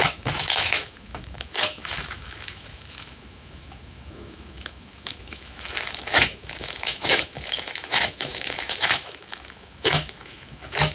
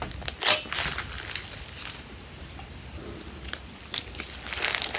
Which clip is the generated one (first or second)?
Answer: first